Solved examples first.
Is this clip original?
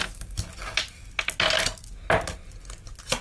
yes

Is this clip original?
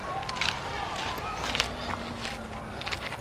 yes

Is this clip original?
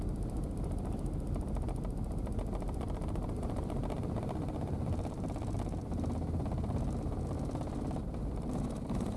no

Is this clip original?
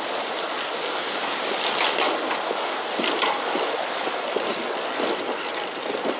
yes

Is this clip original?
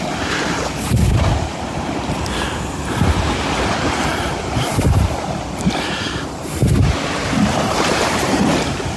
no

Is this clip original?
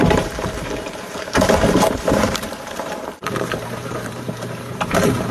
no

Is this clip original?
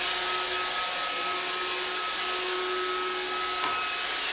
yes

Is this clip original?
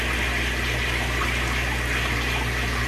yes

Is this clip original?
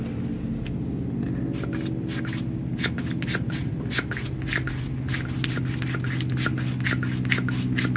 yes